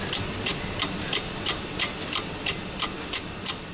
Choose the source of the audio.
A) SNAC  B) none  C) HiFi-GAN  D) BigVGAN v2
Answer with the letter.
B